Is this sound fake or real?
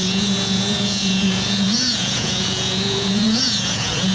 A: fake